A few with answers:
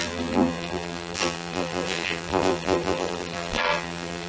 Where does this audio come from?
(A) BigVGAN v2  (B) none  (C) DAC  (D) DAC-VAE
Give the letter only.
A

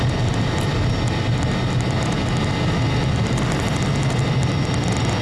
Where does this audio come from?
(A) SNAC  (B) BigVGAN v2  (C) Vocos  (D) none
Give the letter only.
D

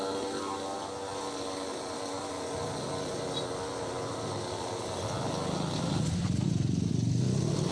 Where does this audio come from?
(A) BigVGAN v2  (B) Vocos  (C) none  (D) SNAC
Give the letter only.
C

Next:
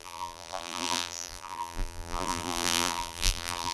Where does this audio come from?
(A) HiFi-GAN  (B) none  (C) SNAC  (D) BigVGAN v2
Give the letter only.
D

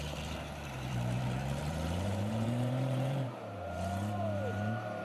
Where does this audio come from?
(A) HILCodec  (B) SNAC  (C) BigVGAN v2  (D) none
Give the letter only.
C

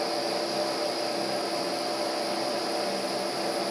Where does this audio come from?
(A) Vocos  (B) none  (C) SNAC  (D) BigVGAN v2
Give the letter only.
B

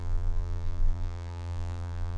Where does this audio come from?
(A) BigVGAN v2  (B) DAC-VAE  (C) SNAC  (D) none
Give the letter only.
A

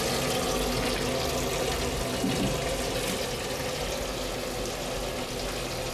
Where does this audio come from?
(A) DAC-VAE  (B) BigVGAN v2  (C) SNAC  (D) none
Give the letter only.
D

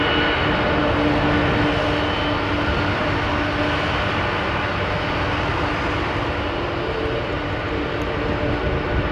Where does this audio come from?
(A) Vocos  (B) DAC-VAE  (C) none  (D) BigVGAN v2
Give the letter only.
C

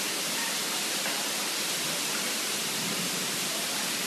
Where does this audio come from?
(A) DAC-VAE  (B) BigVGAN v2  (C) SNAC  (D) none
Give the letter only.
B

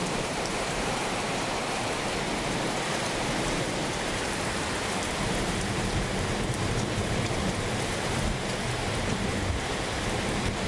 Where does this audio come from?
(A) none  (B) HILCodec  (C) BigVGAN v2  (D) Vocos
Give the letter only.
C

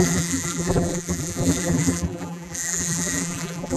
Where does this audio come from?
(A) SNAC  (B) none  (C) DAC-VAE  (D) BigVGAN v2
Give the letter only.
D